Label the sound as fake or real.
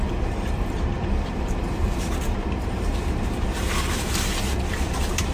fake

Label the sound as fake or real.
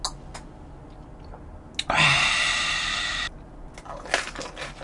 real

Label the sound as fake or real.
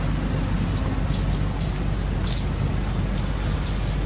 real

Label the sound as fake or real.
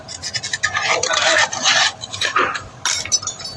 real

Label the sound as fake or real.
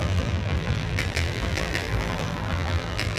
fake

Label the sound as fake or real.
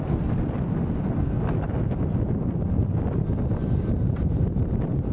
real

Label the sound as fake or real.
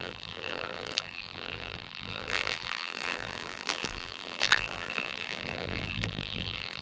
fake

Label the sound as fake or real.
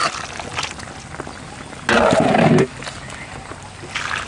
real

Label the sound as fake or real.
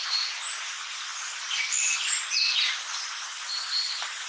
real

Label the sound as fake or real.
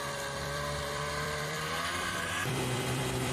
fake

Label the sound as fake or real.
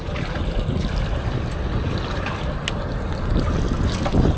real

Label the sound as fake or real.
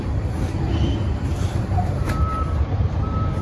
fake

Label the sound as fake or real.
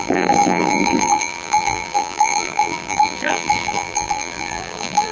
fake